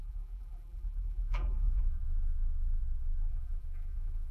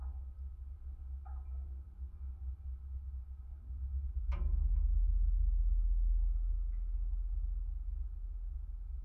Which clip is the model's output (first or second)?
first